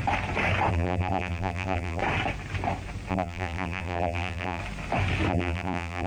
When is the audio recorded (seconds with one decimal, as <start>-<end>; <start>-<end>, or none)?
0.0-0.7; 2.0-3.1; 4.6-5.3